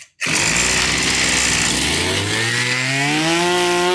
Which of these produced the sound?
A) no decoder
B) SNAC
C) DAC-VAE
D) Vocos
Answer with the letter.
A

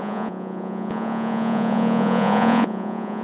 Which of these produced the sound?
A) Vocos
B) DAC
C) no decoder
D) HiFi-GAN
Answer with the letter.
A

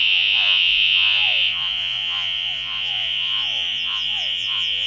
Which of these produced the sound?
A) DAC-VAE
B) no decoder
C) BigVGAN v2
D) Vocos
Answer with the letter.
D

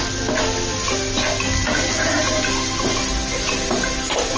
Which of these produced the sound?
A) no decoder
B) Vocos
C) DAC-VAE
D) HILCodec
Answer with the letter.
A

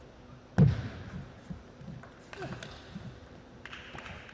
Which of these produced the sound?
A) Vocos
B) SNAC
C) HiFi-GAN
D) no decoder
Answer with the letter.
D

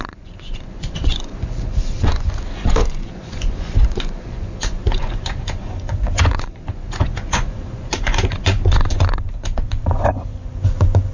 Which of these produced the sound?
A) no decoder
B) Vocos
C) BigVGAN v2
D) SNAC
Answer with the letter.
B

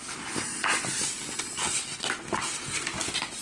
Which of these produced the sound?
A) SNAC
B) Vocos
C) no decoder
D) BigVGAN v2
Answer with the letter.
C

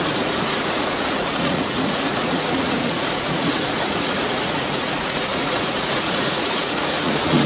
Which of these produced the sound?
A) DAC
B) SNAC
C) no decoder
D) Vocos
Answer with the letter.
D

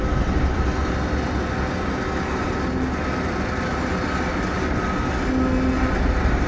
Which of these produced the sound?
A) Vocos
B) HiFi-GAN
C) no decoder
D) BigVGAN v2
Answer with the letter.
C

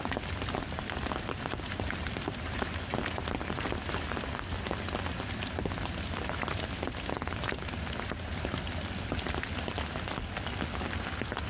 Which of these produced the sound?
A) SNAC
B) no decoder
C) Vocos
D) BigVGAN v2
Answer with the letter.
B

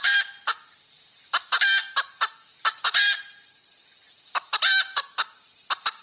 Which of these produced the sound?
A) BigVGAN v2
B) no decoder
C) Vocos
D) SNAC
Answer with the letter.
B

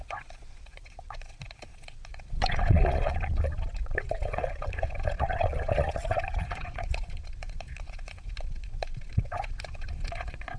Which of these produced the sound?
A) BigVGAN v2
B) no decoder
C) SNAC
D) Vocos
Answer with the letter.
D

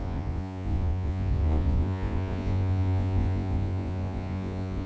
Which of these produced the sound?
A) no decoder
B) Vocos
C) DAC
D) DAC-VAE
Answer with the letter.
B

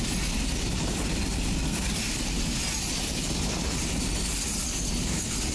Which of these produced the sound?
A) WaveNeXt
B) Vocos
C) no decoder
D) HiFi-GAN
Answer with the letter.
C